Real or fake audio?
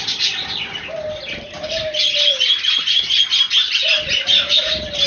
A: real